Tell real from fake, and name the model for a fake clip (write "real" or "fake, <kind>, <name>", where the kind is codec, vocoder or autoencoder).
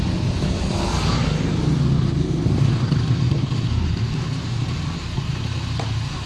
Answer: real